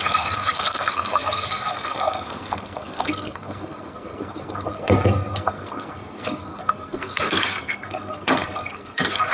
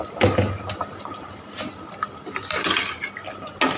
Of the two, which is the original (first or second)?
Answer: second